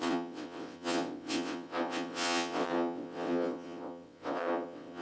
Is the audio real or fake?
fake